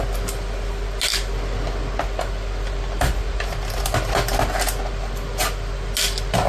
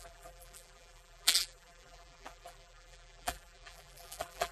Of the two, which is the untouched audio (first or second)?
first